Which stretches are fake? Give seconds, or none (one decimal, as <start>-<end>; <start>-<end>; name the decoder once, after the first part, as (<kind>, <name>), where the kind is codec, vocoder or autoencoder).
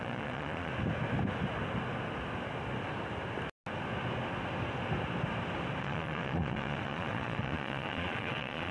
0.0-0.7 (vocoder, Vocos); 5.8-8.7